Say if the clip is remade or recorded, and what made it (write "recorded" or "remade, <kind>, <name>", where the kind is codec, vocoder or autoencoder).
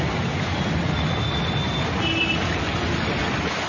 remade, vocoder, BigVGAN v2